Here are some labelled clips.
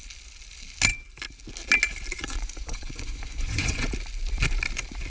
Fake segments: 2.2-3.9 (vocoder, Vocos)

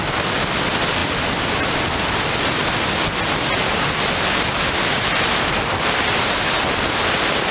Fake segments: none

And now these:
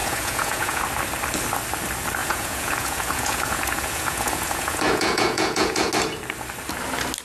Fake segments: 0.0-0.8 (vocoder, Vocos); 2.2-5.9

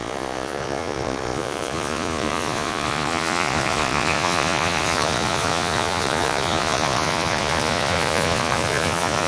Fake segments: 0.0-9.3 (vocoder, Vocos)

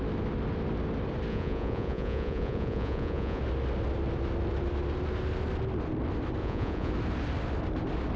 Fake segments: 1.3-3.4 (vocoder, Vocos); 6.4-6.9